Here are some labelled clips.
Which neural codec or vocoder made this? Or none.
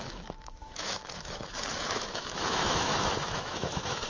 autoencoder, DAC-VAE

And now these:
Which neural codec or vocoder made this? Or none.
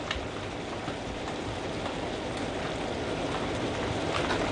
none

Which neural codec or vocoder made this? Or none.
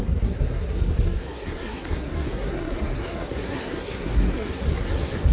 codec, SNAC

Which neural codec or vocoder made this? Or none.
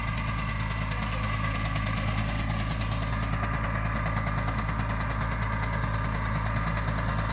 none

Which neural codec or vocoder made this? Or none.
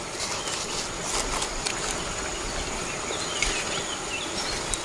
none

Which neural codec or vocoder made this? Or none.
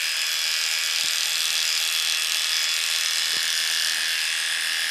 none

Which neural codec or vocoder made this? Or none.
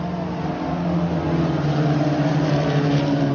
none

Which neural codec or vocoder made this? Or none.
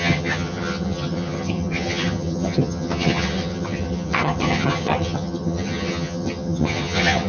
vocoder, HiFi-GAN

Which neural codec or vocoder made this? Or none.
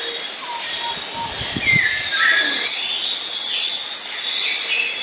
none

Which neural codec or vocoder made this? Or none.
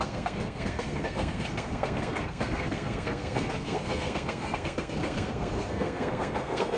codec, SNAC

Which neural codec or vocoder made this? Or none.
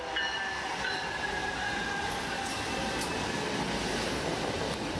none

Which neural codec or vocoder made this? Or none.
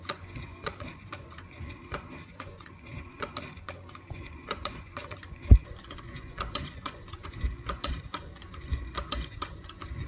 vocoder, Vocos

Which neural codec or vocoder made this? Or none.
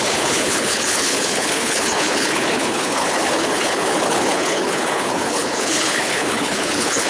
codec, HILCodec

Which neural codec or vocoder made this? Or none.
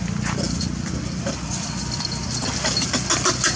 none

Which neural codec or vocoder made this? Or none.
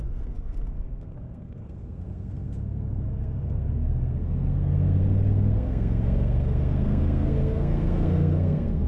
codec, SNAC